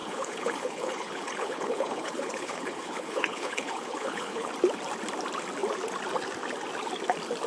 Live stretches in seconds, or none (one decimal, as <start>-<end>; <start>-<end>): 4.5-7.5